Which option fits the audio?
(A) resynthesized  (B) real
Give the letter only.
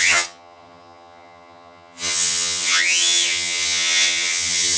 A